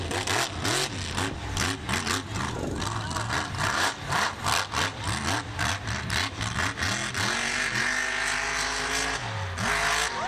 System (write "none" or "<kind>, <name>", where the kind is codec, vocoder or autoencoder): none